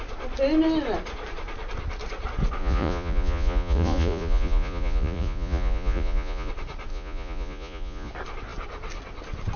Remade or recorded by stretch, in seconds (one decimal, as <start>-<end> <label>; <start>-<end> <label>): 0.0-2.6 recorded; 2.6-6.5 remade; 6.5-6.9 recorded; 6.9-8.1 remade; 8.1-9.6 recorded